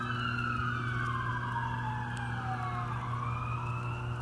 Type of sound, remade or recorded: recorded